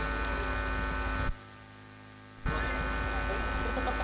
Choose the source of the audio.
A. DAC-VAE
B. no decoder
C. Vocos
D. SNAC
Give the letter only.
B